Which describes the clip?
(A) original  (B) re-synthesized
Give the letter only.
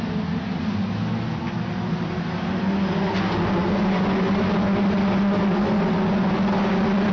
A